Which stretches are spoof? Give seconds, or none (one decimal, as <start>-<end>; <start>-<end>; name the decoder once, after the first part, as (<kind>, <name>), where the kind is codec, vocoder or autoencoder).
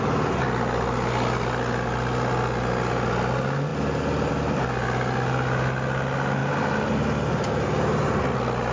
none